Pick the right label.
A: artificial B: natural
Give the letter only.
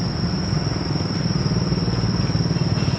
B